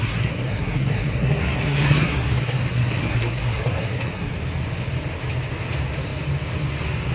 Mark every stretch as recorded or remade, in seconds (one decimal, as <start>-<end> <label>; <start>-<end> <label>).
0.0-4.3 remade; 4.3-7.1 recorded